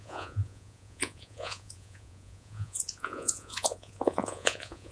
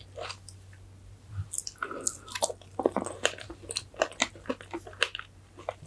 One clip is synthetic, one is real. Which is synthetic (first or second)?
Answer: first